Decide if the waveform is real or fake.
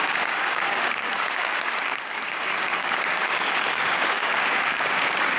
fake